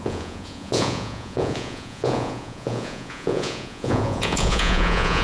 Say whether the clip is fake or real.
fake